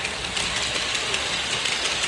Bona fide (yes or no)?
yes